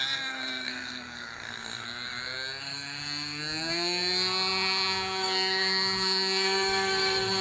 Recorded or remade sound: remade